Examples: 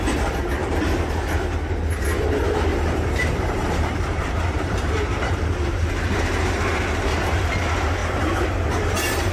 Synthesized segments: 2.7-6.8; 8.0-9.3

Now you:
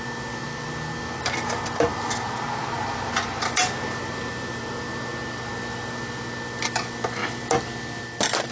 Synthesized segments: none

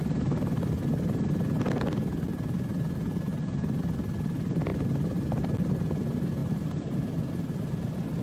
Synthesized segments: 3.3-3.8; 4.7-5.4; 6.4-7.6

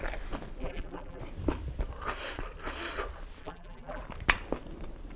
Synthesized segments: 0.6-1.2; 3.4-4.0

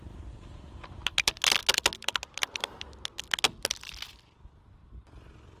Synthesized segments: none